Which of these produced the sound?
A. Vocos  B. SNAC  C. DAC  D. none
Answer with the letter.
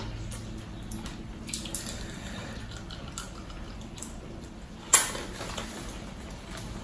D